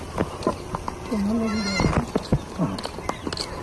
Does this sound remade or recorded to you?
recorded